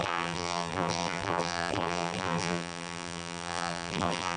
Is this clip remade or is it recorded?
remade